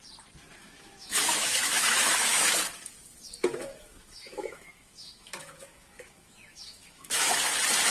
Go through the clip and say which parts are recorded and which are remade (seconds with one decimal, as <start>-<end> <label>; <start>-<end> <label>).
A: 0.0-0.6 recorded; 0.6-2.5 remade; 2.5-3.4 recorded; 3.4-7.3 remade; 7.3-7.9 recorded